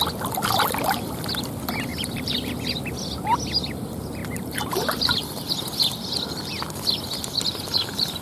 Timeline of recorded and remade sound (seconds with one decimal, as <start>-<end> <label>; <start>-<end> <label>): 0.0-1.9 recorded; 1.9-2.5 remade; 2.5-4.2 recorded; 4.2-5.5 remade; 5.5-8.2 recorded